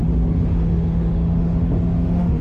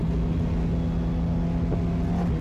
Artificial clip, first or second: first